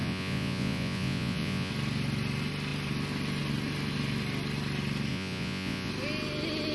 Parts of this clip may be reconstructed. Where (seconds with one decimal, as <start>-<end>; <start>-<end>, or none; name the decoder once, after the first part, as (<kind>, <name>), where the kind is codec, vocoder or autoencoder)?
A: 0.0-1.7 (vocoder, Vocos); 5.1-5.9